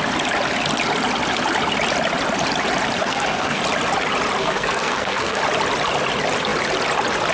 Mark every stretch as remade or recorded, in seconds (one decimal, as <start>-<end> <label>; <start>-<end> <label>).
0.0-3.0 recorded; 3.0-3.6 remade; 3.6-4.4 recorded; 4.4-5.4 remade; 5.4-7.3 recorded